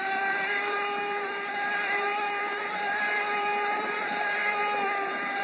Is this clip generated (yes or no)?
yes